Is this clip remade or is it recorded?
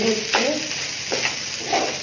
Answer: recorded